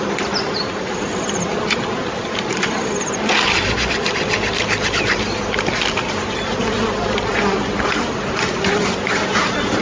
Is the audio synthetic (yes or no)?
no